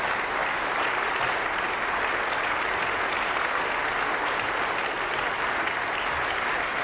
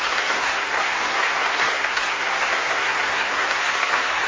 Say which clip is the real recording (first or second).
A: first